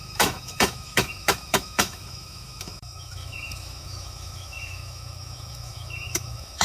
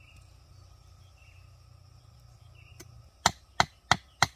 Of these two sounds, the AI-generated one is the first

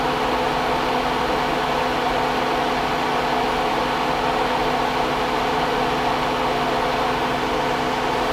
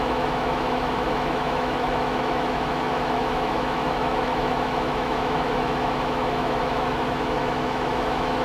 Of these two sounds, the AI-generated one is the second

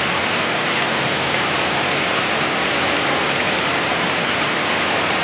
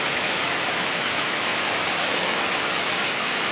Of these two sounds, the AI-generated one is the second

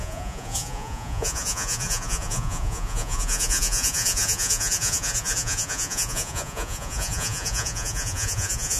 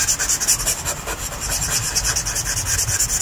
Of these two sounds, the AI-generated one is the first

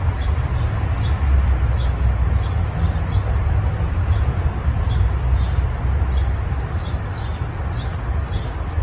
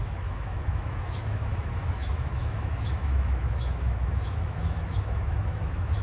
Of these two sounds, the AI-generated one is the second